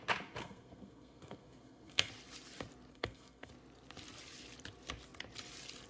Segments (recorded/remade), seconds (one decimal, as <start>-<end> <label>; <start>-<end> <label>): 0.0-0.4 recorded; 0.4-2.1 remade; 2.1-2.9 recorded; 2.9-3.5 remade; 3.5-5.9 recorded